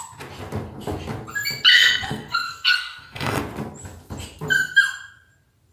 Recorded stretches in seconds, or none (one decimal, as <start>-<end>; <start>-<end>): 0.0-1.7; 3.4-5.7